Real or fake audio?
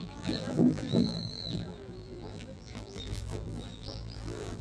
fake